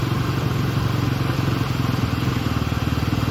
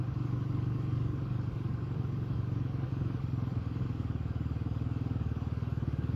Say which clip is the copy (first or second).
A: second